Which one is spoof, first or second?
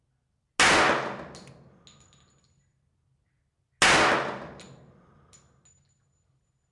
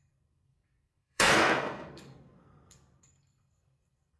second